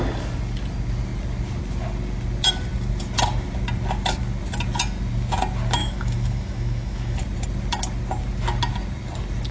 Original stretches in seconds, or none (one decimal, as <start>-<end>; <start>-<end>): 0.0-5.8; 7.2-9.5